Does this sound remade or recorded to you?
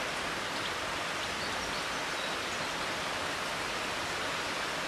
recorded